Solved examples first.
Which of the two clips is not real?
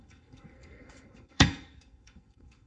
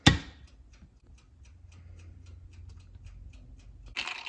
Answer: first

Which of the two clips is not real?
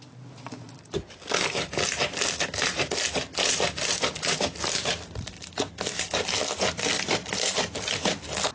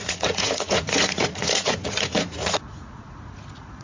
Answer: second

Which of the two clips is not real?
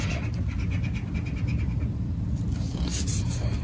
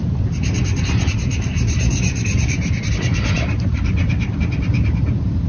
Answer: second